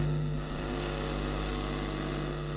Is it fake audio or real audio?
fake